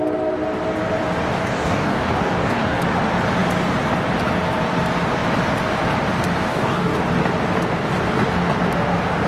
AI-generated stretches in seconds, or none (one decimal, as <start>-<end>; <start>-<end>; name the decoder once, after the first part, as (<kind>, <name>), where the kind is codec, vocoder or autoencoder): 1.3-2.8 (codec, DAC); 6.5-7.0